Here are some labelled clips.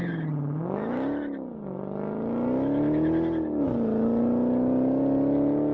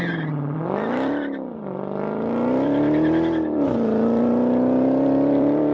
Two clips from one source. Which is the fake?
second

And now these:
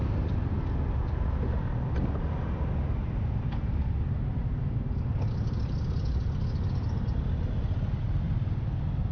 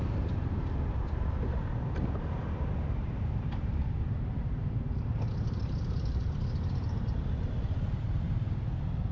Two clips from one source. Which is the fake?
second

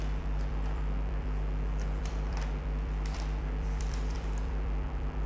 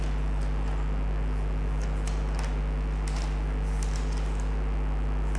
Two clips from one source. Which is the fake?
first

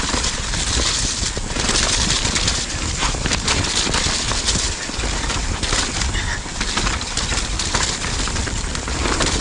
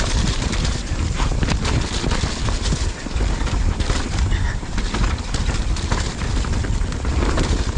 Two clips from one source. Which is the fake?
second